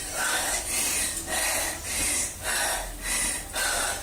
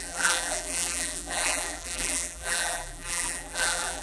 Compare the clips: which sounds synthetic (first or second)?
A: second